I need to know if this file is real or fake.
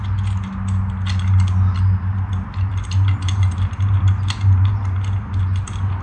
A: real